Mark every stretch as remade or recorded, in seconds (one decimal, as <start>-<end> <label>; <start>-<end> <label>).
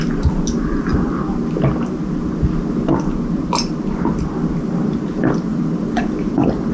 0.0-5.5 recorded; 5.5-6.7 remade